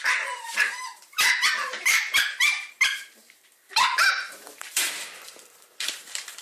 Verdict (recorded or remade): remade